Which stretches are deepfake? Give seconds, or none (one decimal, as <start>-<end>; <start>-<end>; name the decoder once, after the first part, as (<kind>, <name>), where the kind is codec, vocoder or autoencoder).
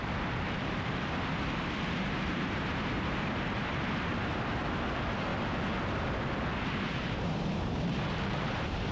0.0-5.3 (vocoder, BigVGAN v2); 6.6-8.9